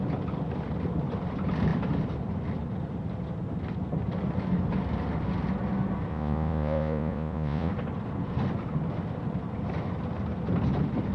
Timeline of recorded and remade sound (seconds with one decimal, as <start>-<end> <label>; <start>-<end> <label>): 0.0-6.1 recorded; 6.1-7.7 remade; 7.7-11.1 recorded